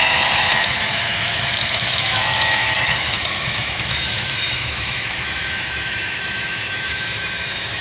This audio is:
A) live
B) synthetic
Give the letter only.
B